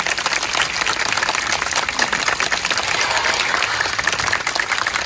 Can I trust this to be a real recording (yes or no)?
yes